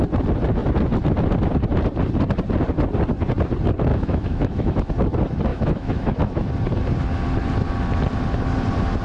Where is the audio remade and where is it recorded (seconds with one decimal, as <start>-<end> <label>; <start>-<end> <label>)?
0.0-3.9 recorded; 3.9-4.9 remade; 4.9-5.5 recorded; 5.5-6.5 remade; 6.5-9.0 recorded